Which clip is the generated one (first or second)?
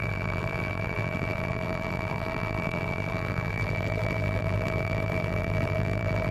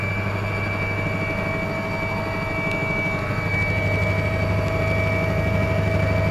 first